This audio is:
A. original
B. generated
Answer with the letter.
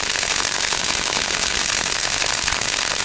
B